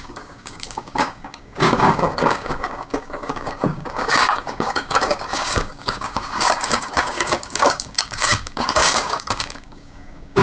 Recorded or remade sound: remade